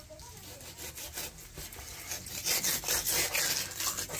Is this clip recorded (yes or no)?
yes